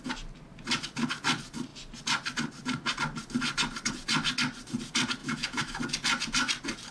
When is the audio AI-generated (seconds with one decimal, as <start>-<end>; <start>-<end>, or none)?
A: 5.2-5.8